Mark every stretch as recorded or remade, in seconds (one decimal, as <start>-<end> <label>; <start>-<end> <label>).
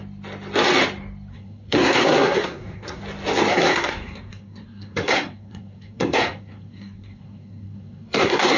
0.0-1.3 recorded; 1.3-3.0 remade; 3.0-3.5 recorded; 3.5-8.6 remade